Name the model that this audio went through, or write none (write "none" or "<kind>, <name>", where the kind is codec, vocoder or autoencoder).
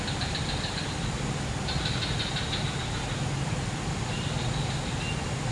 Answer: none